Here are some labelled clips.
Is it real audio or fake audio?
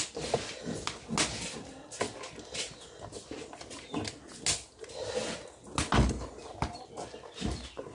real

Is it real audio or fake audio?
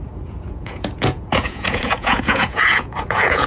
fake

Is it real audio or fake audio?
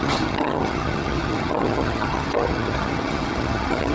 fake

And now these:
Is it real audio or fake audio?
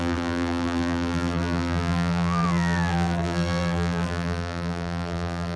fake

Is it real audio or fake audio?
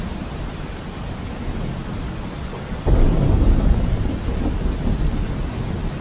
real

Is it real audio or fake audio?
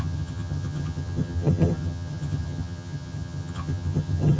fake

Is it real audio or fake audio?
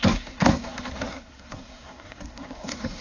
fake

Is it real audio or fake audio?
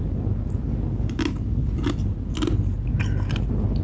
real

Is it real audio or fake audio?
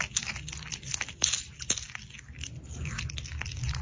real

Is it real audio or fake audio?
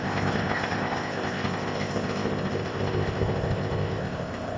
fake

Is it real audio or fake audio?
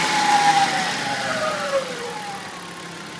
real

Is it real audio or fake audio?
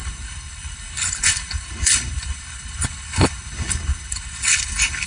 fake